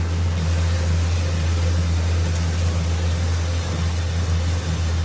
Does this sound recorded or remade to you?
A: recorded